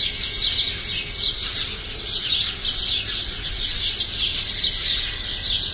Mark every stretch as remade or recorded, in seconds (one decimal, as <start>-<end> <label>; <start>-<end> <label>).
0.0-5.7 recorded